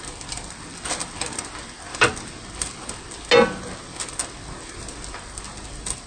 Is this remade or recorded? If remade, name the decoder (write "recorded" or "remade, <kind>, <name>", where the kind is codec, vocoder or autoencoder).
recorded